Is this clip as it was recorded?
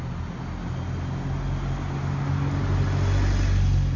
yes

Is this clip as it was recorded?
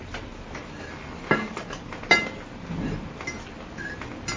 yes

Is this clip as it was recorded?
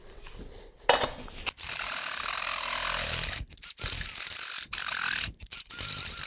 yes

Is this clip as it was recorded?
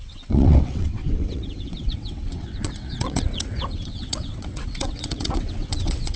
no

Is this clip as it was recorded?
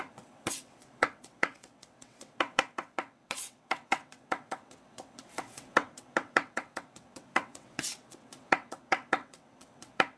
no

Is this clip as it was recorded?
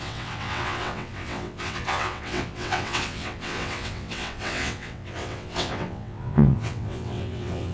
no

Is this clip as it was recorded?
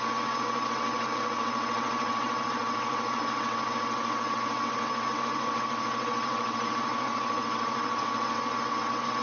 no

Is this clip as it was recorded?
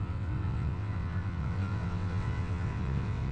no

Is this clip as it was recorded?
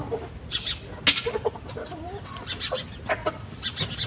yes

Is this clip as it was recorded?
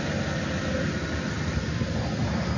yes